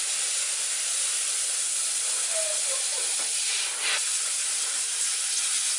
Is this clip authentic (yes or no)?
yes